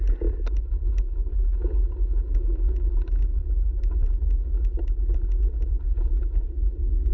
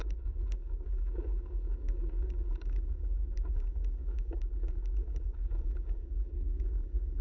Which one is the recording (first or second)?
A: first